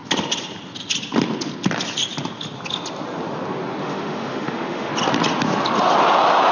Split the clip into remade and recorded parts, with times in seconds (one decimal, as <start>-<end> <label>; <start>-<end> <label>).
0.0-3.8 recorded; 3.8-4.9 remade; 4.9-6.5 recorded

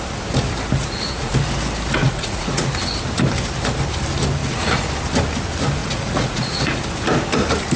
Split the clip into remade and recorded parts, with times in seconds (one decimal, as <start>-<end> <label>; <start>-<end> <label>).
0.0-0.8 recorded; 0.8-1.3 remade; 1.3-2.0 recorded; 2.0-2.7 remade; 2.7-4.4 recorded; 4.4-4.9 remade; 4.9-5.8 recorded; 5.8-6.8 remade; 6.8-7.8 recorded

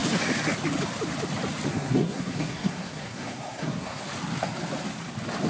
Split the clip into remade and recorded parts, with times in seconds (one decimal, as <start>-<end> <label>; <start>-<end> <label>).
0.0-1.7 recorded; 1.7-4.0 remade; 4.0-5.5 recorded

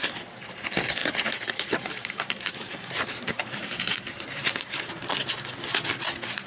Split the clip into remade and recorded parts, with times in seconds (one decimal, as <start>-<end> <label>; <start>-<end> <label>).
0.0-1.0 recorded; 1.0-4.9 remade; 4.9-6.5 recorded

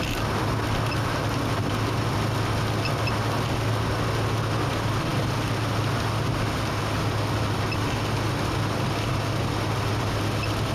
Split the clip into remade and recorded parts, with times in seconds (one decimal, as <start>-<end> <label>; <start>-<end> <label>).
0.0-10.7 recorded

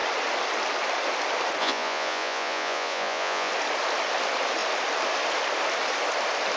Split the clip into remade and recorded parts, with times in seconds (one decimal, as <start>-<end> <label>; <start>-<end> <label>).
0.0-1.6 recorded; 1.6-3.5 remade; 3.5-6.6 recorded